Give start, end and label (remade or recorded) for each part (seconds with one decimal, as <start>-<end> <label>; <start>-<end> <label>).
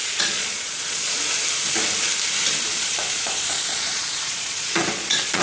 0.0-1.2 remade; 1.2-2.7 recorded; 2.7-5.4 remade